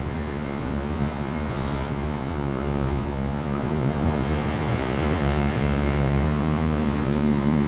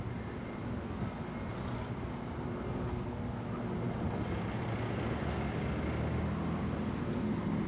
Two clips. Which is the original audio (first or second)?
second